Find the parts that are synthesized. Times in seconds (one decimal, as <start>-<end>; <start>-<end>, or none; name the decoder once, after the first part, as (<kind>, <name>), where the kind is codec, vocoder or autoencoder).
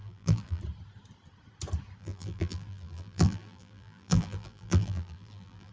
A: 0.0-0.6 (vocoder, BigVGAN v2); 2.0-5.7